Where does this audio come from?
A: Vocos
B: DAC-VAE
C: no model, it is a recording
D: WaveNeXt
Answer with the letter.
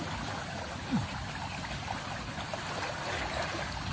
C